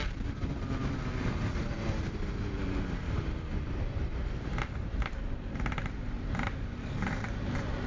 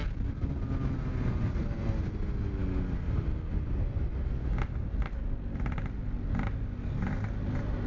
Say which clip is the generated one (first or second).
first